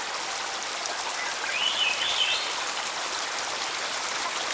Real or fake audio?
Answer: real